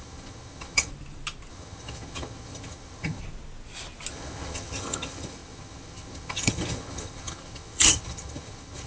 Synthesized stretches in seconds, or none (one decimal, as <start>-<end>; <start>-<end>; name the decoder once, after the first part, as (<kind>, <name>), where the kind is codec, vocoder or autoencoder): 0.0-0.9 (vocoder, HiFi-GAN); 1.5-3.2; 4.1-8.9